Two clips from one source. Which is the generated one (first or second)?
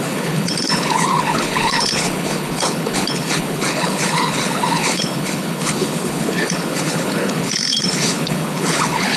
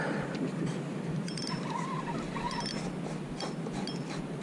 first